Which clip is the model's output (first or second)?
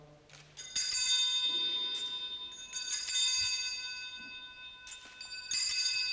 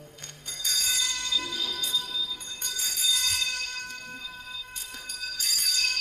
second